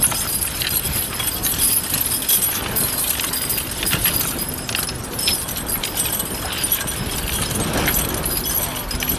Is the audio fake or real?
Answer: real